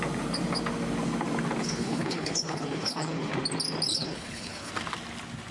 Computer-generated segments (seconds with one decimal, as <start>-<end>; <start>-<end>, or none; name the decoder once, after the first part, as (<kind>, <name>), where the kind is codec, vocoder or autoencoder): 1.6-3.3 (codec, HILCodec); 3.9-4.7